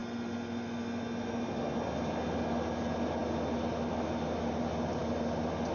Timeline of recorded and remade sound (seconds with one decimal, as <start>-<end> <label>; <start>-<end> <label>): 0.0-5.7 recorded